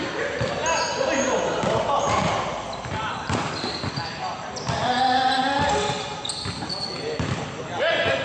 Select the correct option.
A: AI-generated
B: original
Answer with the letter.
B